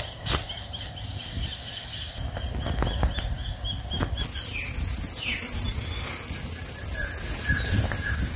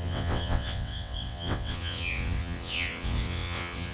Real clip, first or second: first